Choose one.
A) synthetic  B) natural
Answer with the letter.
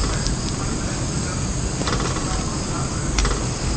B